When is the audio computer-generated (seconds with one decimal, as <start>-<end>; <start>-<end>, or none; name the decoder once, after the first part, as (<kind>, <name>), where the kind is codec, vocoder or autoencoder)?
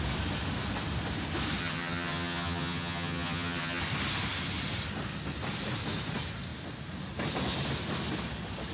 1.6-3.8 (vocoder, HiFi-GAN)